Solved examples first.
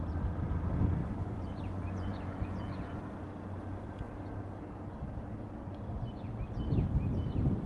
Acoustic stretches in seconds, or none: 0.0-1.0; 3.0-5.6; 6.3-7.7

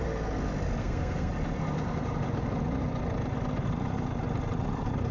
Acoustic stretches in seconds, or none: 0.0-0.8; 1.3-5.1